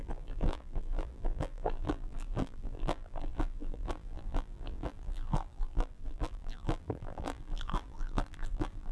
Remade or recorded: remade